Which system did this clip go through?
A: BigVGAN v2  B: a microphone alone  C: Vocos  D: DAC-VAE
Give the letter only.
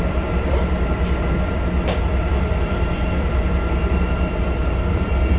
A